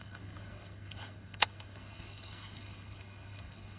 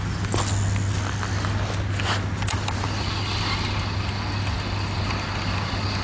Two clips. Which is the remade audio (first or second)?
first